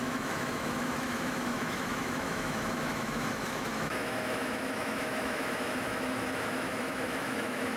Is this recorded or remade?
remade